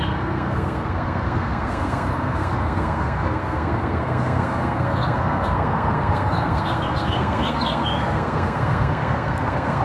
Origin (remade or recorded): remade